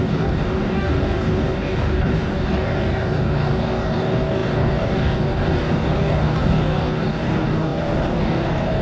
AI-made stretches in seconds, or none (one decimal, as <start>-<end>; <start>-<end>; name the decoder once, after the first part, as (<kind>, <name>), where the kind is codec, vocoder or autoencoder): 0.0-8.8 (codec, DAC)